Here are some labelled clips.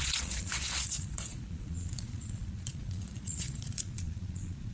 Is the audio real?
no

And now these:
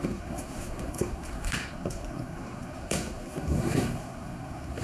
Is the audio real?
no